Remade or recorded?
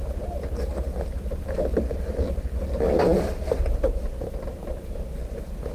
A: recorded